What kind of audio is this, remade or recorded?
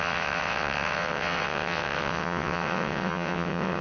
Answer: remade